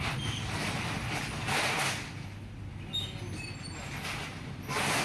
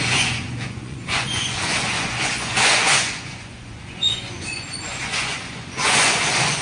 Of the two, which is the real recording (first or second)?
first